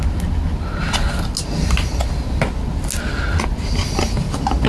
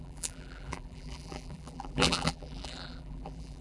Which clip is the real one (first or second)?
first